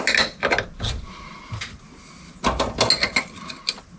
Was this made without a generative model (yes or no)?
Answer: yes